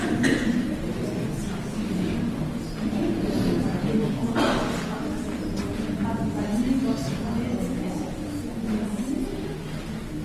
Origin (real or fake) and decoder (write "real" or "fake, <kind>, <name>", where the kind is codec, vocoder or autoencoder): real